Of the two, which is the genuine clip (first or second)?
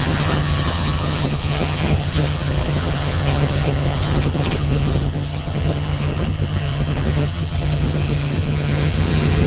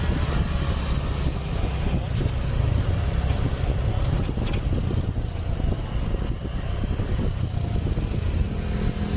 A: second